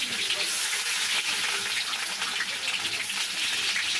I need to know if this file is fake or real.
real